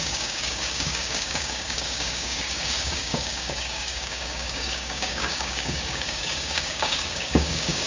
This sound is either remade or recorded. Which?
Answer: remade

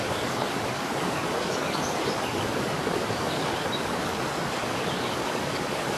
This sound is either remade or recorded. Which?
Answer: remade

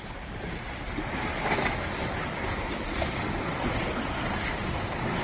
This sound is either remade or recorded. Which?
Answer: remade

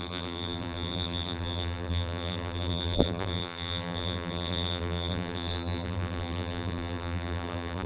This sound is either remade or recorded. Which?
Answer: remade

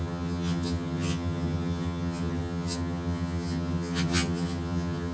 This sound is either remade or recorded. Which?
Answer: remade